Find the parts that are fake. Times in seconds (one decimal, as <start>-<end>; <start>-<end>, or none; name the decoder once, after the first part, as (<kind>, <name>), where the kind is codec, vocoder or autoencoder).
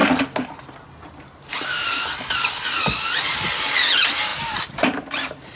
none